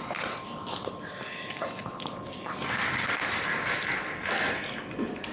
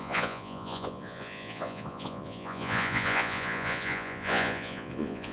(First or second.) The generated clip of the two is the second